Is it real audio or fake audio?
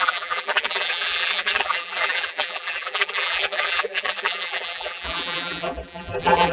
fake